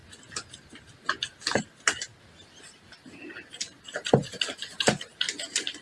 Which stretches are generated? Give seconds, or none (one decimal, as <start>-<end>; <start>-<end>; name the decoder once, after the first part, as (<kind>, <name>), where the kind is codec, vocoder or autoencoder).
none

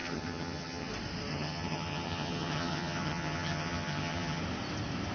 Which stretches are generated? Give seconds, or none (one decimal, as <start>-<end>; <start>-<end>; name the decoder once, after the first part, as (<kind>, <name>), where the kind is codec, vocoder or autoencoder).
0.0-0.9 (vocoder, HiFi-GAN); 1.3-4.4